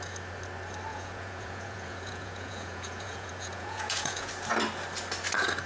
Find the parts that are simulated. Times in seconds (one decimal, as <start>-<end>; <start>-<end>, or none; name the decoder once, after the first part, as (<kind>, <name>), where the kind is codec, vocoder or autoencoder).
0.9-4.3 (vocoder, Vocos)